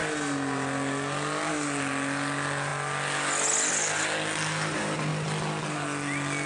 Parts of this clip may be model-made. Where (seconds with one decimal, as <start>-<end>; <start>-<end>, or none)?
none